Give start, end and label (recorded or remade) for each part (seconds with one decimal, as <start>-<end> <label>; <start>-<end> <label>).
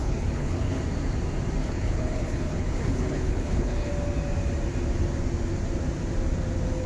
0.0-0.8 remade; 0.8-1.6 recorded; 1.6-3.9 remade; 3.9-6.9 recorded